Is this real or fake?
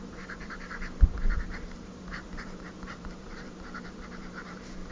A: fake